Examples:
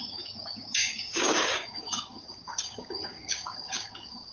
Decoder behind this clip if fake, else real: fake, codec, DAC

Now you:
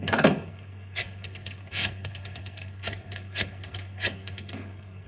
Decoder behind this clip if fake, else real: fake, codec, SNAC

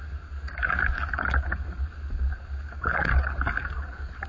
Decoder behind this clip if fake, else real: fake, codec, DAC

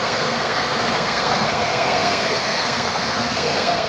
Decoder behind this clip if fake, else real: fake, codec, SNAC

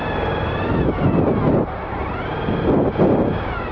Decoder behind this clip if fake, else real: real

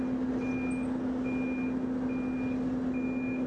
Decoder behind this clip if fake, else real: real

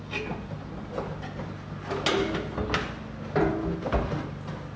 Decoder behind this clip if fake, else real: real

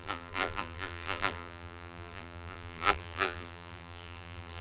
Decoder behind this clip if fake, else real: fake, vocoder, BigVGAN v2